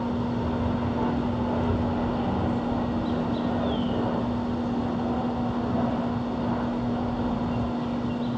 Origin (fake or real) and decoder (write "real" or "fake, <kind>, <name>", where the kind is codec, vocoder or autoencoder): real